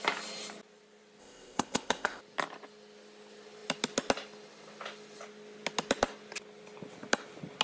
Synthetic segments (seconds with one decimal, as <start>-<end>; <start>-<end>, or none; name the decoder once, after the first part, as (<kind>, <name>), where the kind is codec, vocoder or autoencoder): 1.2-2.2 (codec, ZipCodec)